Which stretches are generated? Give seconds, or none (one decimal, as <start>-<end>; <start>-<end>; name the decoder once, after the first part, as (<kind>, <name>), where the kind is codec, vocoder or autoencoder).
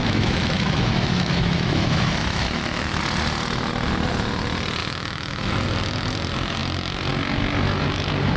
0.0-3.0 (autoencoder, DAC-VAE); 4.8-5.5